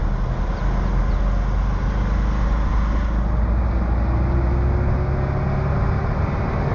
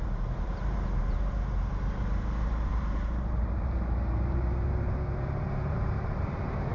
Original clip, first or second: first